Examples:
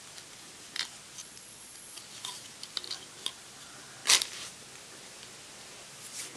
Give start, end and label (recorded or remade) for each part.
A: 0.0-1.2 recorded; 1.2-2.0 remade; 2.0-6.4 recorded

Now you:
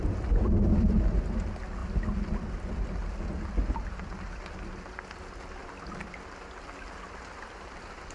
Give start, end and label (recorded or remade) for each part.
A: 0.0-8.1 recorded

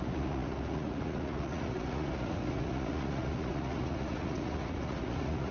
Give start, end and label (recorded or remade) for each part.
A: 0.0-5.5 remade

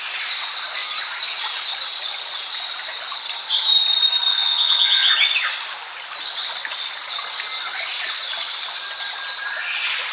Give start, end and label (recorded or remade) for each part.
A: 0.0-4.3 recorded; 4.3-5.1 remade; 5.1-10.1 recorded

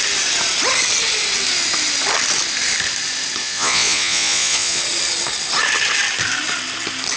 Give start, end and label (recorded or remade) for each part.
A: 0.0-3.4 recorded; 3.4-4.8 remade; 4.8-7.2 recorded

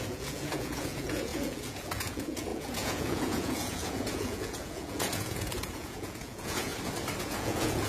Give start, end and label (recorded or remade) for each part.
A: 0.0-6.7 remade; 6.7-7.2 recorded; 7.2-7.9 remade

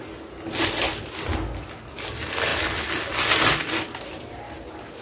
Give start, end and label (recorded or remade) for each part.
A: 0.0-5.0 recorded

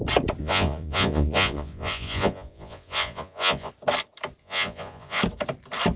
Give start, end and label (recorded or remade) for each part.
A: 0.0-0.4 recorded; 0.4-3.7 remade; 3.7-4.4 recorded; 4.4-5.2 remade; 5.2-6.0 recorded